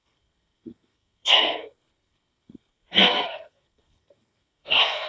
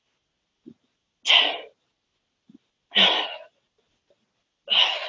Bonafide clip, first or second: second